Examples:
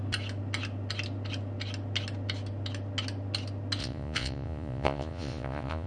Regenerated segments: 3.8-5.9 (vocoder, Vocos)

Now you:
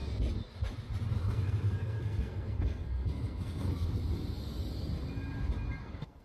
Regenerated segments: 1.2-4.0 (codec, SNAC); 5.8-6.2

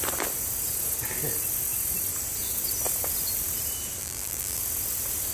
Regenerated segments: 4.0-4.6 (vocoder, BigVGAN v2)

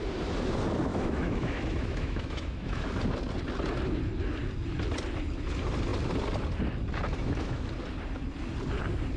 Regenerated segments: 0.9-2.8 (autoencoder, DAC-VAE); 7.2-7.7

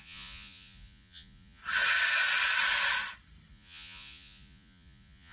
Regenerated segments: 0.0-1.6 (vocoder, Vocos); 3.5-5.3

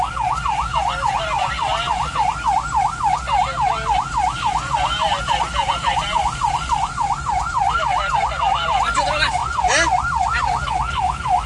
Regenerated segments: none

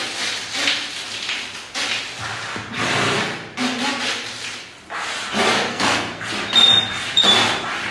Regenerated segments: 5.7-6.3 (codec, SNAC)

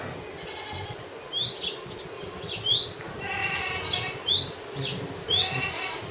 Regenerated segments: none